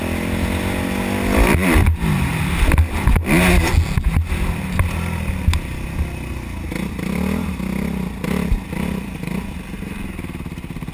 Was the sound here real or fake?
real